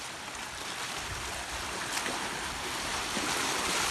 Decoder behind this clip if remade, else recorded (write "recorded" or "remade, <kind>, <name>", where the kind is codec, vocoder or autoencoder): recorded